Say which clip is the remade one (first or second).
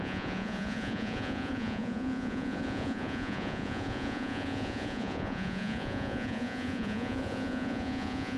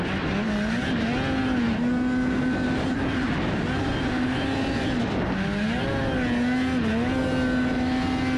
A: first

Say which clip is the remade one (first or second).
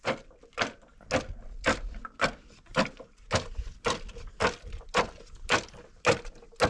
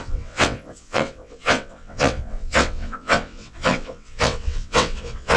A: second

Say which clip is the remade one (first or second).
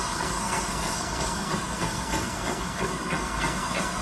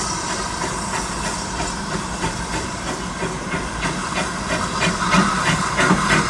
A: first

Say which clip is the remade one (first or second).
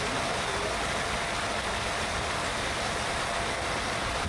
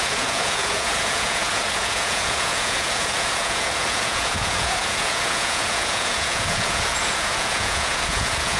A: second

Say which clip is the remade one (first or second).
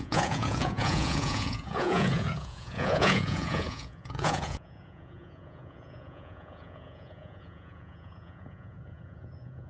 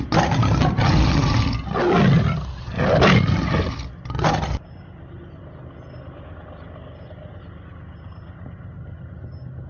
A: first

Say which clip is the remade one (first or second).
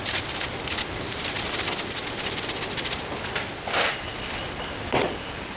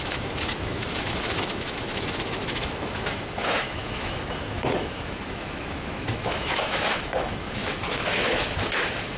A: second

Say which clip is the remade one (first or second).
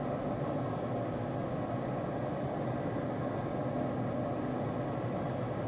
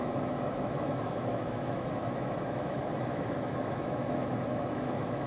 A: second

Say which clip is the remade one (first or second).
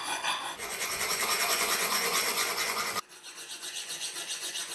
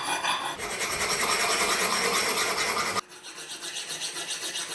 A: first